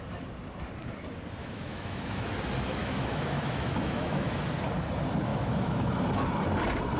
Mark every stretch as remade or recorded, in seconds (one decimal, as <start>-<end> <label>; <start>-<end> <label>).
0.0-1.4 recorded; 1.4-2.3 remade; 2.3-2.8 recorded; 2.8-4.5 remade; 4.5-5.3 recorded; 5.3-5.9 remade; 5.9-7.0 recorded